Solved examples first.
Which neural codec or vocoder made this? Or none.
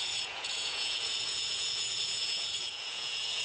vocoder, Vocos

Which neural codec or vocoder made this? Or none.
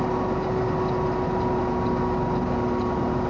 none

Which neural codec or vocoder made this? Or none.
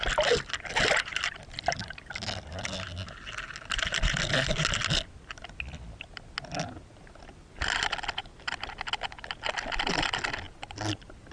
none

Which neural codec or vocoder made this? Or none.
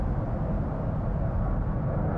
none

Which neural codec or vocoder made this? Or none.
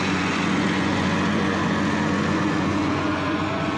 vocoder, Vocos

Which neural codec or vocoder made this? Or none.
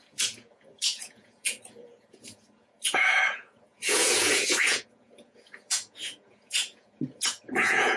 vocoder, Vocos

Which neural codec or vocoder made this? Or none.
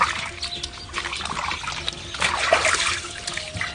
none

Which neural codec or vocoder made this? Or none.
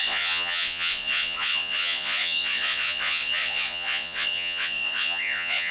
vocoder, Vocos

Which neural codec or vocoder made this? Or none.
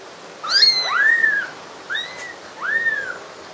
none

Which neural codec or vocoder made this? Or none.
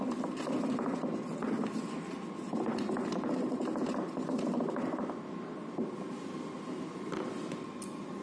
none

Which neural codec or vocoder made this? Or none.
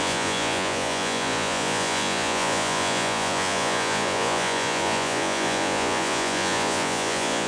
vocoder, Vocos